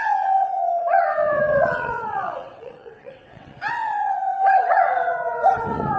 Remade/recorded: remade